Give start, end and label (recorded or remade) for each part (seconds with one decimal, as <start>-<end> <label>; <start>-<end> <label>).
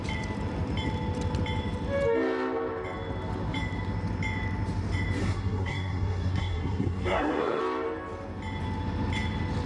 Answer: 0.0-5.2 recorded; 5.2-7.6 remade; 7.6-9.7 recorded